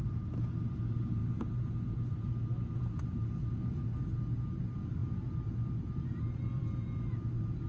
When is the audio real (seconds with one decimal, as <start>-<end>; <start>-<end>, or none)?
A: 0.0-7.7